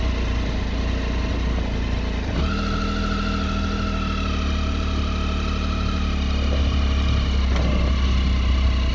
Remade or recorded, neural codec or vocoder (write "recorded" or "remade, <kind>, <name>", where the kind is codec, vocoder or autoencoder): recorded